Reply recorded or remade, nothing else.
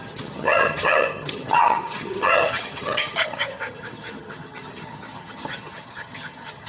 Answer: remade